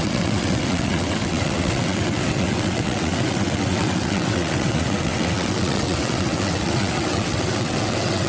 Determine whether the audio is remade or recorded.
remade